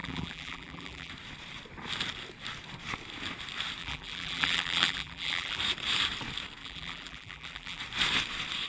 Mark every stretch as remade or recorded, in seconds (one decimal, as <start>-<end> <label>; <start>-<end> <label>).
0.0-1.1 remade; 1.1-3.8 recorded; 3.8-5.6 remade; 5.6-6.6 recorded; 6.6-7.8 remade; 7.8-8.7 recorded